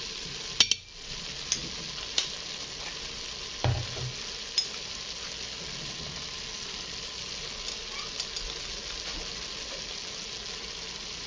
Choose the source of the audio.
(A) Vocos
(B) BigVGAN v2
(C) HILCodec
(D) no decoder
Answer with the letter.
D